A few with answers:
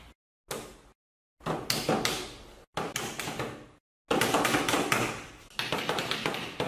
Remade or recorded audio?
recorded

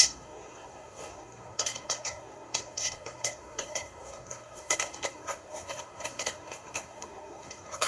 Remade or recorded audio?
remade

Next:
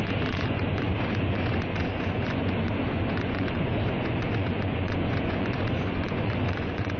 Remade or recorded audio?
remade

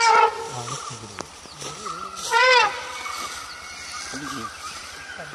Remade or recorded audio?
recorded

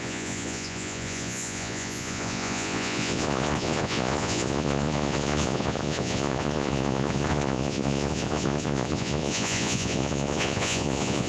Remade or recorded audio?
remade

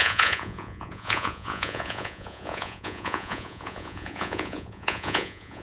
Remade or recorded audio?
remade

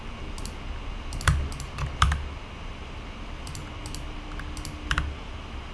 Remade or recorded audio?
recorded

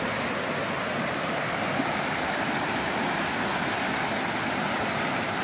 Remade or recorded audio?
recorded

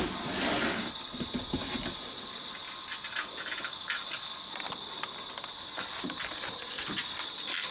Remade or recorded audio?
recorded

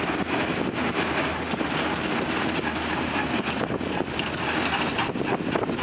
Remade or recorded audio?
recorded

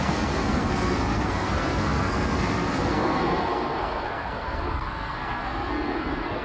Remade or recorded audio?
remade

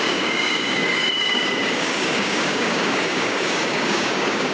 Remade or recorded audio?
remade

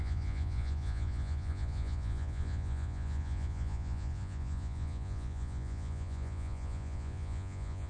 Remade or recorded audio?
remade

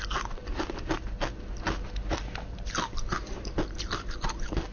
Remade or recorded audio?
recorded